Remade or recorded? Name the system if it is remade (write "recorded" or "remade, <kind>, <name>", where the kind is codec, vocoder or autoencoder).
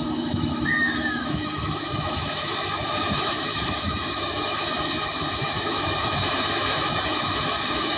remade, autoencoder, DAC-VAE